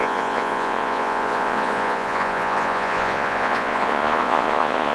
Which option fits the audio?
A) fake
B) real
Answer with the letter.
A